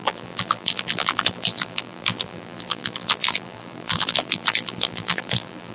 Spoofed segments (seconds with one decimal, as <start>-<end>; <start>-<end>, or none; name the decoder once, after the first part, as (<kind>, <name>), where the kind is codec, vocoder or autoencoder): 0.0-5.7 (vocoder, BigVGAN v2)